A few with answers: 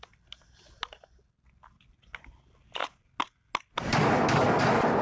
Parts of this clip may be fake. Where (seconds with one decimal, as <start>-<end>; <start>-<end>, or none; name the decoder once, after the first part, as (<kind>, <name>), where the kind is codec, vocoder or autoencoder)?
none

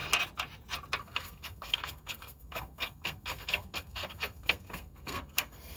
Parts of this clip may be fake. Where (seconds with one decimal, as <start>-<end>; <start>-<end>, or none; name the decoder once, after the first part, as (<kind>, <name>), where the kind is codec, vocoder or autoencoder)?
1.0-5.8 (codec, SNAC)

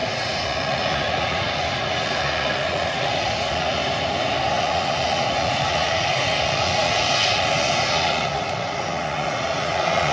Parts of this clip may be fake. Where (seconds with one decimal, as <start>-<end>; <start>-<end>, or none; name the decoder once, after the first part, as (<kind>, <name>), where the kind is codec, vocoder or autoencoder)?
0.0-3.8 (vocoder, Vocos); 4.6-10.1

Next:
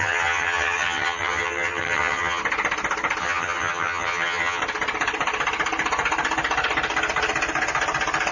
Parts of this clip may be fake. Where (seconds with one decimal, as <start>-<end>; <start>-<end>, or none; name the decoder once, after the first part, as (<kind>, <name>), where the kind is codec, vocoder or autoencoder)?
0.0-2.4 (vocoder, HiFi-GAN); 3.2-4.6

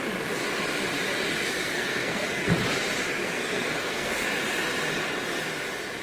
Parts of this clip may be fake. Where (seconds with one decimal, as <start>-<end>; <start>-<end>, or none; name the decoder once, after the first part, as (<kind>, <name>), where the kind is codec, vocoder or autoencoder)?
1.4-2.6 (codec, SNAC); 3.2-4.3

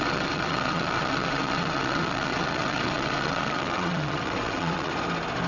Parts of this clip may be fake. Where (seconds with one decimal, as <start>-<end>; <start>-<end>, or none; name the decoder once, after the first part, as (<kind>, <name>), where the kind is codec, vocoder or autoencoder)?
0.0-4.9 (vocoder, WaveNeXt)

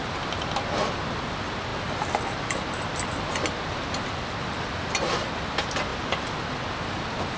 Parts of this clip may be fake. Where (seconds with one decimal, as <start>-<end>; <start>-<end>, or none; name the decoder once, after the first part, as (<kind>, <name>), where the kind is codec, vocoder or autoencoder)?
none

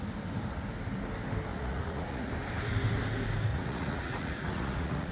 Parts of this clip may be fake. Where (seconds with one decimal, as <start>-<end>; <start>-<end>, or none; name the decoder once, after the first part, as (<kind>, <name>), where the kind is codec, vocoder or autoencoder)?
1.5-2.3 (vocoder, Vocos); 3.5-5.1